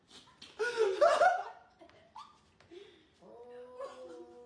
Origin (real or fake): real